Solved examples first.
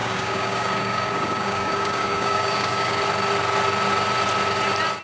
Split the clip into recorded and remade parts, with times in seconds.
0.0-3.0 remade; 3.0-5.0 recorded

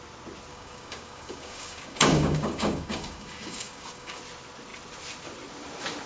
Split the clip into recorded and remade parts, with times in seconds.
0.0-0.5 recorded; 0.5-4.2 remade; 4.2-6.1 recorded

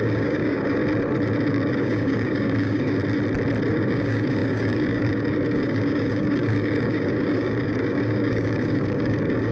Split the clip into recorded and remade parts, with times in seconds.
0.0-0.8 remade; 0.8-1.5 recorded; 1.5-3.0 remade; 3.0-3.7 recorded; 3.7-9.5 remade